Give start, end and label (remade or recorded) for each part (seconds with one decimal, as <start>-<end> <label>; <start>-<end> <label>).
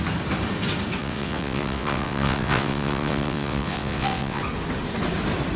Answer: 0.0-1.0 recorded; 1.0-4.4 remade; 4.4-5.6 recorded